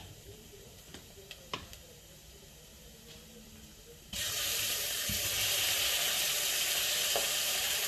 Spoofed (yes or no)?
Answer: yes